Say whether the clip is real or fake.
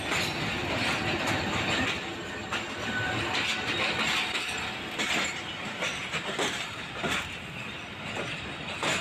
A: real